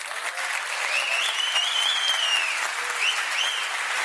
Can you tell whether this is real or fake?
real